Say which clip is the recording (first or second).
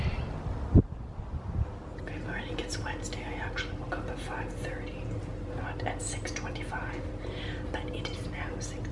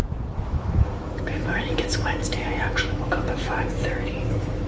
first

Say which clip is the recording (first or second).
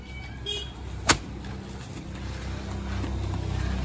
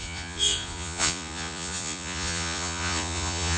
first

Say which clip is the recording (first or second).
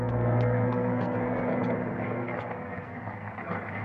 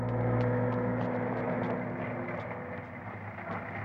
second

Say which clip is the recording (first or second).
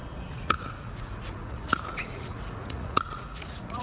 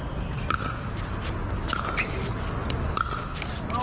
second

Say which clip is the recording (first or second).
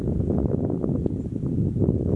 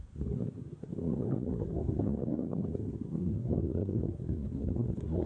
first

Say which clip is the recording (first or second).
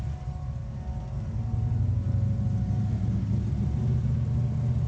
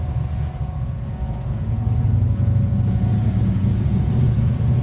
first